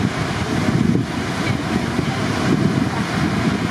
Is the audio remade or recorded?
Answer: recorded